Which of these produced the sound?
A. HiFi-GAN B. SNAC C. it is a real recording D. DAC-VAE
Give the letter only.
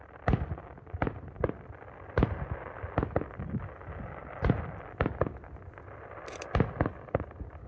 C